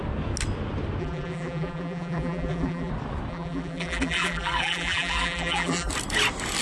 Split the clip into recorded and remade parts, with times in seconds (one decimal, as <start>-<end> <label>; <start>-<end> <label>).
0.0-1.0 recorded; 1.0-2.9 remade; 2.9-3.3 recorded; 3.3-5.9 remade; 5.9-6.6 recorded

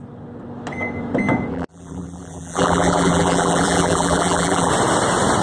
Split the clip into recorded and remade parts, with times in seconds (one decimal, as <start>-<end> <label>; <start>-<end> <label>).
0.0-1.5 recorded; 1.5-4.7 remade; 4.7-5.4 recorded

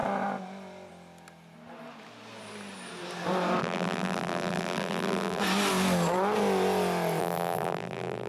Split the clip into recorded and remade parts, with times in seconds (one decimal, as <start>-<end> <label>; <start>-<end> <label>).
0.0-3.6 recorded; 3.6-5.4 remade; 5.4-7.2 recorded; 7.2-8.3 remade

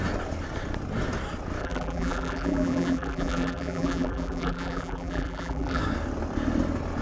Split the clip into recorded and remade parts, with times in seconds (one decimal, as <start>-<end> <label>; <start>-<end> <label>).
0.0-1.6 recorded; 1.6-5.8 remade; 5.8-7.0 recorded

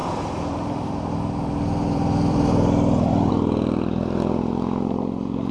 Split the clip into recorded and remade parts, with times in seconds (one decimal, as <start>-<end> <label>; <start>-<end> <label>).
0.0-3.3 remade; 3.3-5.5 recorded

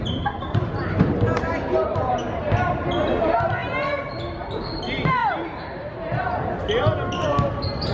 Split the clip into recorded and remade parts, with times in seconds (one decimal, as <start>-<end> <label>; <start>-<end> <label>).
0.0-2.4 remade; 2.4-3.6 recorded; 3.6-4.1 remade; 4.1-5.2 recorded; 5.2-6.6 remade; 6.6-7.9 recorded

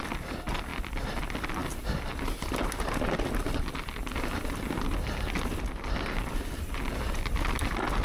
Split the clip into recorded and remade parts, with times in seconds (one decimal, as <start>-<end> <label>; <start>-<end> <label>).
0.0-8.0 recorded

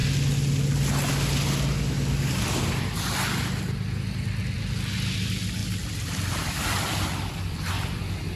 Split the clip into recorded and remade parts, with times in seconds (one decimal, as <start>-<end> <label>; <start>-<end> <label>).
0.0-5.6 recorded; 5.6-7.7 remade; 7.7-8.4 recorded